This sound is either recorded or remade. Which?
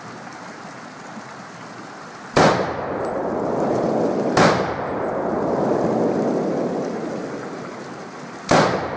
recorded